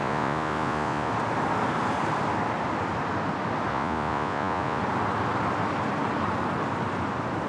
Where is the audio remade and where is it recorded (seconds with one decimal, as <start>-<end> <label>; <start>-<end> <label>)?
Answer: 0.0-1.1 remade; 1.1-3.7 recorded; 3.7-4.8 remade; 4.8-7.5 recorded

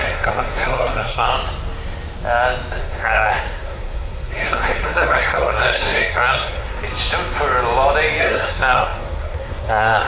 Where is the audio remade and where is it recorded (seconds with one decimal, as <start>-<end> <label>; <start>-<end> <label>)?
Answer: 0.0-1.3 remade; 1.3-2.8 recorded; 2.8-6.8 remade; 6.8-8.2 recorded; 8.2-10.1 remade

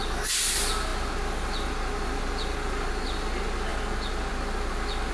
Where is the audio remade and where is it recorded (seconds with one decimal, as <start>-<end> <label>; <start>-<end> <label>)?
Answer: 0.0-5.1 recorded

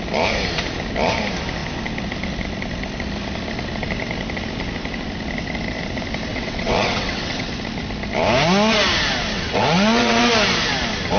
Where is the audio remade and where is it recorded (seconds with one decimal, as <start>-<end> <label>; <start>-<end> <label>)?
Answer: 0.0-6.3 recorded; 6.3-7.5 remade; 7.5-9.3 recorded; 9.3-10.2 remade; 10.2-11.2 recorded

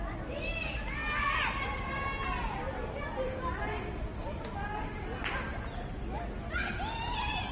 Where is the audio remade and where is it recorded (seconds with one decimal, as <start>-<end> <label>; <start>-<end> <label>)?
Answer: 0.0-7.5 recorded

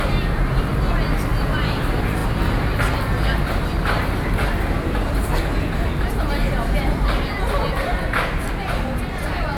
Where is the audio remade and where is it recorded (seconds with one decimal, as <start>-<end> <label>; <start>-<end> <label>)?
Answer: 0.0-9.6 recorded

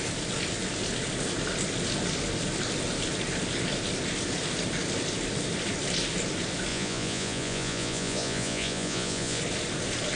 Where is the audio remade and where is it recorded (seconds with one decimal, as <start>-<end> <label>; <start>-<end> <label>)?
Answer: 0.0-6.7 recorded; 6.7-9.4 remade; 9.4-10.2 recorded